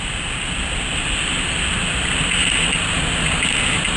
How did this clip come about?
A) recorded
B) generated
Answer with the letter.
A